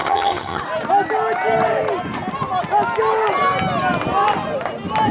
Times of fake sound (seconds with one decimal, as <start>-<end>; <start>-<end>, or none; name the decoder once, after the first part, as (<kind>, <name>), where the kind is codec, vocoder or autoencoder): 0.0-0.6 (vocoder, HiFi-GAN)